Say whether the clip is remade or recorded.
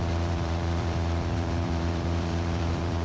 remade